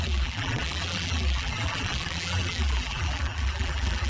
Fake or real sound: fake